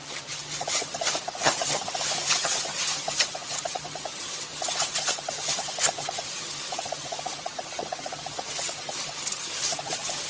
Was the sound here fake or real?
fake